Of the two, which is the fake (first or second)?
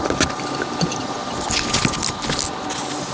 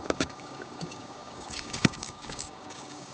second